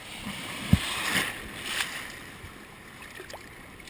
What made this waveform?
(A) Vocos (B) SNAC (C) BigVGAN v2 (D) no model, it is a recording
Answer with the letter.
D